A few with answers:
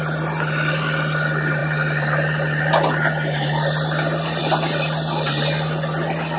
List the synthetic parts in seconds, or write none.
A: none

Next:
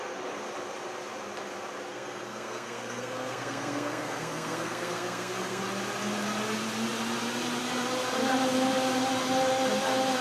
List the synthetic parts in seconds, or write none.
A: 1.9-5.6 (codec, SNAC)

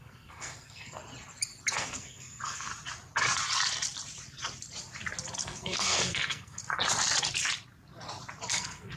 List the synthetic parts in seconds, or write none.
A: 0.0-1.0 (codec, SNAC); 1.7-2.7; 5.4-6.6; 8.5-9.0

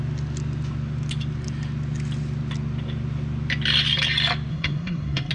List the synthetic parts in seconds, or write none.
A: 4.5-5.3 (codec, SNAC)

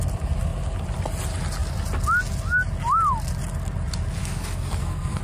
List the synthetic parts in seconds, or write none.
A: 4.2-5.2 (codec, SNAC)

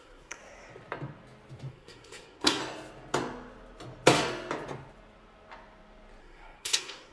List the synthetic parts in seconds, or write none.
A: 0.0-0.4 (codec, SNAC); 1.7-2.6; 6.2-7.1

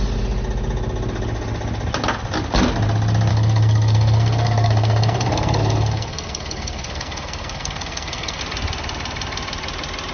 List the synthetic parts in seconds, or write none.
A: 3.3-8.4 (codec, SNAC)

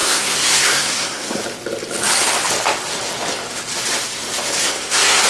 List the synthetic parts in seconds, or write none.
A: 0.0-1.4 (codec, SNAC); 4.6-5.3